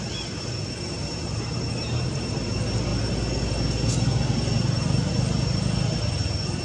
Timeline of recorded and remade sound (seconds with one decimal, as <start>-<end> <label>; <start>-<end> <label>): 0.0-6.6 recorded